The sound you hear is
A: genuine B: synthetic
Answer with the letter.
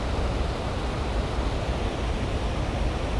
A